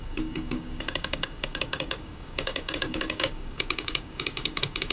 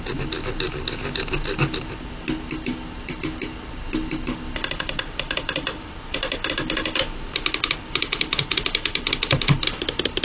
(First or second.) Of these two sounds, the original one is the second